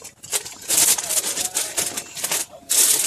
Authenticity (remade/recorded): recorded